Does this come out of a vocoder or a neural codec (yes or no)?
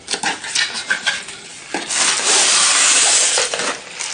no